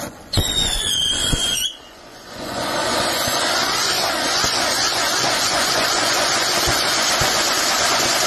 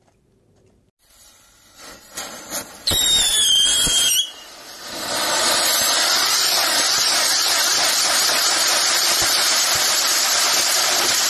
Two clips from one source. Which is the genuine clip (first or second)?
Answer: second